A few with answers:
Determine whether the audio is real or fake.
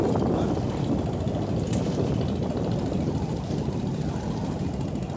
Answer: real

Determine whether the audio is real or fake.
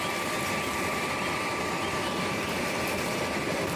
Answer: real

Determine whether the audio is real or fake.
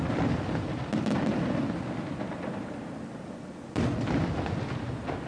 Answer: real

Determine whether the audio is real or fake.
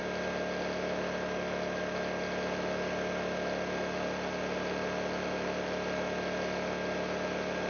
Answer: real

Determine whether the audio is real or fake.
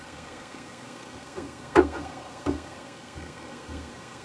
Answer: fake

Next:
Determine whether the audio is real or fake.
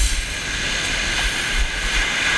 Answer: real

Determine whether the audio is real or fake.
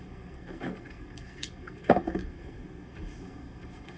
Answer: fake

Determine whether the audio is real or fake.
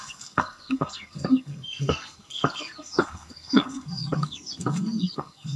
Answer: fake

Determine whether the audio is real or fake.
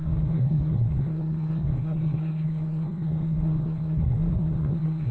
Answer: fake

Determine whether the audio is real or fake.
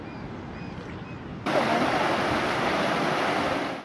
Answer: real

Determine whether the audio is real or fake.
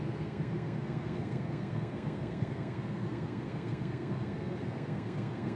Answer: fake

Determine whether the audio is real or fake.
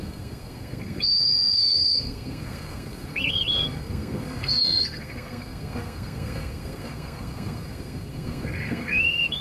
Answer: fake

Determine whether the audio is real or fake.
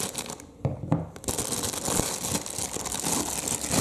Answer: real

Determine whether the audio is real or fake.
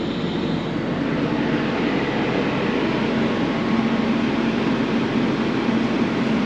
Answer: real